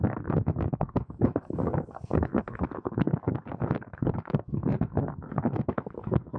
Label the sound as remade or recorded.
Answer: remade